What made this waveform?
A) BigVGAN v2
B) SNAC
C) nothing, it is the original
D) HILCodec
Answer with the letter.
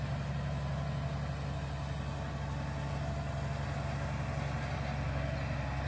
C